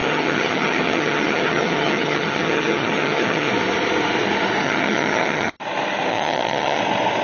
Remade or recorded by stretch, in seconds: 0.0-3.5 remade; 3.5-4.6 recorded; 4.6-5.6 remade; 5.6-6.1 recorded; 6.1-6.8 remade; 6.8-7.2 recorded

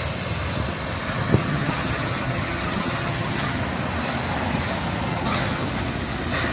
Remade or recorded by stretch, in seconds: 0.0-1.4 recorded; 1.4-3.6 remade; 3.6-5.1 recorded; 5.1-5.7 remade; 5.7-6.5 recorded